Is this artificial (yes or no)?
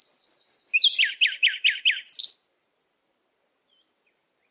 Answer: no